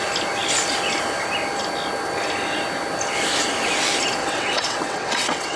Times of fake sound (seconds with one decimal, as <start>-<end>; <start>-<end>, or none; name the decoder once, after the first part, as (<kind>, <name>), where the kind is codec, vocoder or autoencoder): 4.2-5.6 (vocoder, WaveNeXt)